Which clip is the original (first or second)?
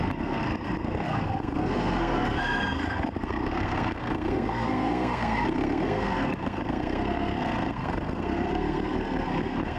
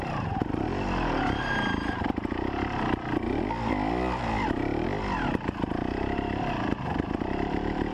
second